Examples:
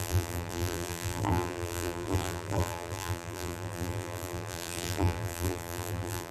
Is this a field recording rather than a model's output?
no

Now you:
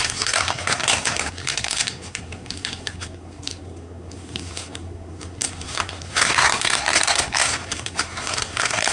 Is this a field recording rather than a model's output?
no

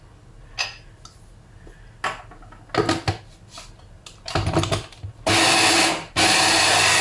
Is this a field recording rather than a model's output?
yes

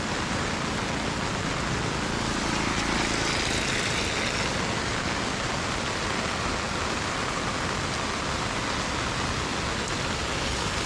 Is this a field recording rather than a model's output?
yes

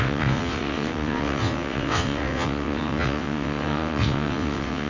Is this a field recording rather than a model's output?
no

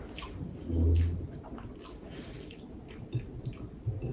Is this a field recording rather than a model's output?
yes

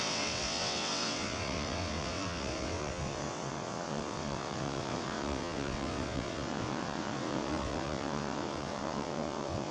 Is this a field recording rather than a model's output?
no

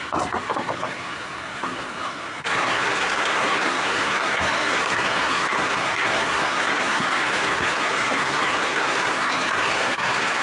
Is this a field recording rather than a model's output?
no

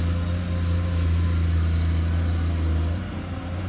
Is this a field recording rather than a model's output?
yes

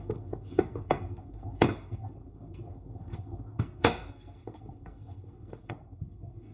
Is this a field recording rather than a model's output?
no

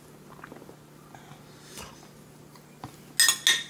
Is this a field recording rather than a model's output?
yes